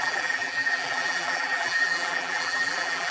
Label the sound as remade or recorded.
remade